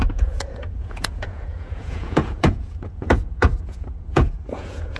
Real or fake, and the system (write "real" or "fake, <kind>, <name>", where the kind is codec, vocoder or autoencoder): fake, vocoder, Vocos